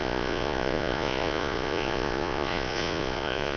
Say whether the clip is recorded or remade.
remade